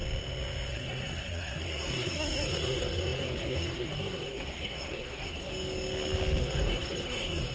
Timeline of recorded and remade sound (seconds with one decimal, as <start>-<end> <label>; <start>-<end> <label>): 0.0-0.7 recorded; 0.7-5.5 remade; 5.5-6.4 recorded; 6.4-7.5 remade